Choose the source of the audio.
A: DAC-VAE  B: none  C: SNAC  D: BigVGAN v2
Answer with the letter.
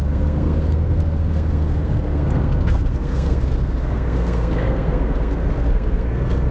C